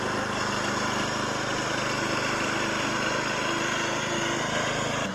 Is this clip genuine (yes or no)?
yes